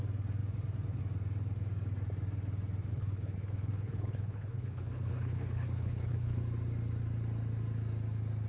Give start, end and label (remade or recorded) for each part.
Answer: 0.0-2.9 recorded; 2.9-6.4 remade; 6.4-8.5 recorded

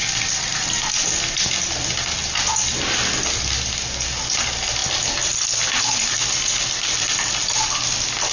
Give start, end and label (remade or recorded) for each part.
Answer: 0.0-8.3 recorded

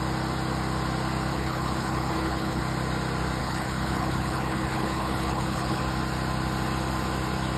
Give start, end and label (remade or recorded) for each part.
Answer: 0.0-1.3 recorded; 1.3-2.6 remade; 2.6-3.4 recorded; 3.4-5.8 remade; 5.8-7.6 recorded

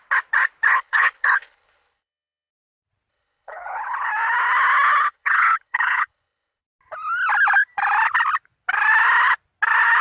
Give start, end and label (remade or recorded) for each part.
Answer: 0.0-0.7 recorded; 0.7-2.5 remade; 2.5-3.1 recorded; 3.1-4.1 remade; 4.1-5.1 recorded; 5.1-6.6 remade; 6.6-10.0 recorded

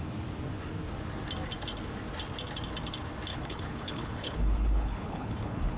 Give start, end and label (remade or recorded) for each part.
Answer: 0.0-3.3 recorded; 3.3-5.8 remade

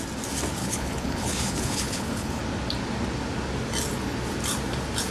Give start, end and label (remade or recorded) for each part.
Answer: 0.0-0.6 recorded; 0.6-2.4 remade; 2.4-5.1 recorded

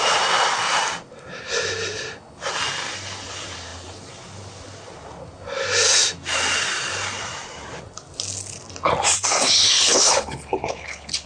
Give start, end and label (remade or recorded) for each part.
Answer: 0.0-9.3 recorded; 9.3-11.3 remade

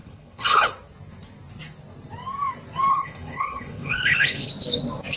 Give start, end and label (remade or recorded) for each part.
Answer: 0.0-0.7 remade; 0.7-2.9 recorded; 2.9-4.5 remade; 4.5-5.2 recorded